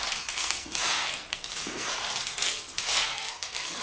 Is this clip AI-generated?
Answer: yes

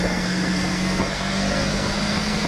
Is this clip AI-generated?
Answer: yes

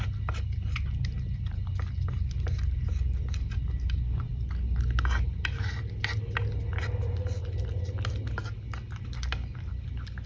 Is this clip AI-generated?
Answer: no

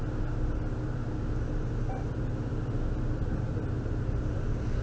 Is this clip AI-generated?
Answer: no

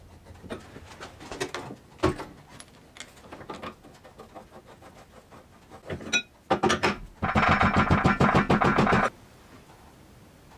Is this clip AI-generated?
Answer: no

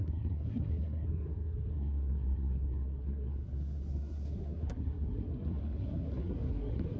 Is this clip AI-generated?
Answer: yes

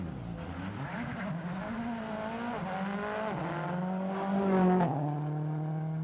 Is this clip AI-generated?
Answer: no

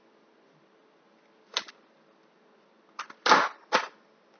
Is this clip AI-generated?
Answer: no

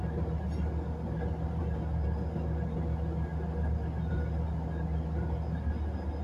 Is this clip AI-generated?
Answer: no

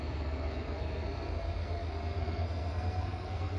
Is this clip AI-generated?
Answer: yes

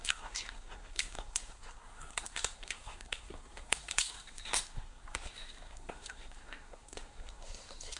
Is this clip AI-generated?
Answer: yes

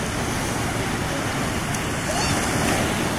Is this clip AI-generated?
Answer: no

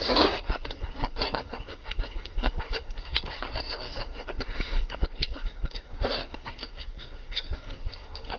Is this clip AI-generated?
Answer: yes